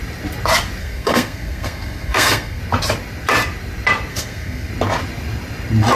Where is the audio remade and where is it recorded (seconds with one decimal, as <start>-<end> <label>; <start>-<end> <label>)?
0.0-0.8 recorded; 0.8-2.6 remade; 2.6-4.1 recorded; 4.1-4.7 remade; 4.7-6.0 recorded